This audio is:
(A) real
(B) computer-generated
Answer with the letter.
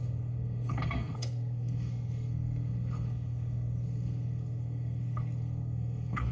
B